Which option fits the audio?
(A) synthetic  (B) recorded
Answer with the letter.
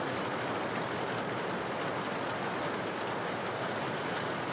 B